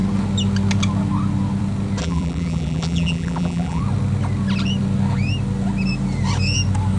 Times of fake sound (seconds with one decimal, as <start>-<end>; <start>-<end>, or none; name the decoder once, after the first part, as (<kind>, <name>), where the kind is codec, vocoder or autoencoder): 2.0-3.8 (vocoder, BigVGAN v2)